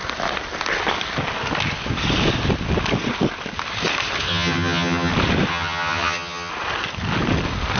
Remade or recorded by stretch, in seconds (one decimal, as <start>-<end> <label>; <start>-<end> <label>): 0.0-4.3 recorded; 4.3-5.1 remade; 5.1-5.5 recorded; 5.5-6.5 remade; 6.5-7.8 recorded